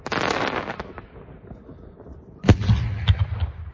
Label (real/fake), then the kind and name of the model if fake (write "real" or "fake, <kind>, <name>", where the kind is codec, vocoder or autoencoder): real